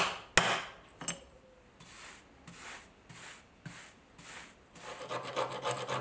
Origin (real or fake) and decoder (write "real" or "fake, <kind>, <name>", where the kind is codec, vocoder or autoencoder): real